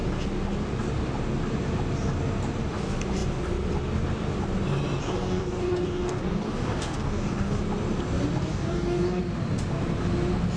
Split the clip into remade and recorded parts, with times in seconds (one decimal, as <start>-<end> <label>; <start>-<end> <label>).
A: 0.0-5.0 recorded; 5.0-7.6 remade; 7.6-8.5 recorded; 8.5-9.2 remade; 9.2-10.6 recorded